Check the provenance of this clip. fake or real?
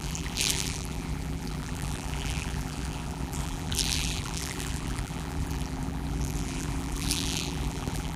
fake